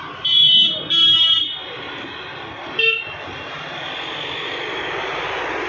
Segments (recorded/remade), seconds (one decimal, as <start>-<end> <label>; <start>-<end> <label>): 0.0-5.7 recorded